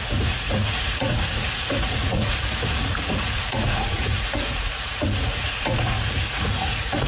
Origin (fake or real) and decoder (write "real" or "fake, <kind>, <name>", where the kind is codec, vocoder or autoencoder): fake, vocoder, Vocos